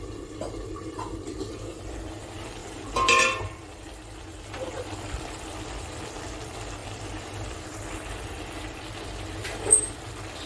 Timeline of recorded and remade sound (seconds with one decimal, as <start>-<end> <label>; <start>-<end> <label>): 0.0-10.5 remade